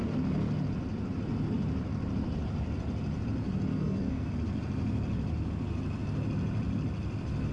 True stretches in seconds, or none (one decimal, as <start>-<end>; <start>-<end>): 0.0-3.7; 4.3-7.5